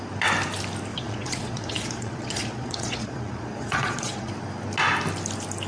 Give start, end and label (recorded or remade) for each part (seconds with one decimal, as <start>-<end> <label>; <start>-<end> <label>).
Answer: 0.0-0.9 recorded; 0.9-4.3 remade; 4.3-5.7 recorded